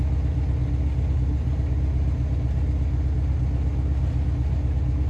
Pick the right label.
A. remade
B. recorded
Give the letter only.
B